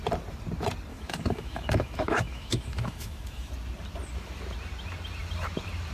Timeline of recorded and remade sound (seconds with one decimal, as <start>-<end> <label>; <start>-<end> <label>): 0.0-0.9 recorded; 0.9-3.5 remade; 3.5-5.9 recorded